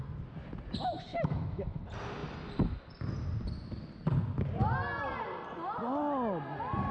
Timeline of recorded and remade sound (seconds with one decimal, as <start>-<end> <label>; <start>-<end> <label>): 0.0-1.1 recorded; 1.1-1.8 remade; 1.8-6.9 recorded